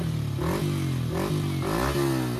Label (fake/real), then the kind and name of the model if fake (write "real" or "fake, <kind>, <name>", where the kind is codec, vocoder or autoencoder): real